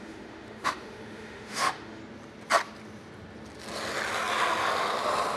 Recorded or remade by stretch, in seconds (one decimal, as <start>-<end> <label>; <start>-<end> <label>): 0.0-2.0 remade; 2.0-5.4 recorded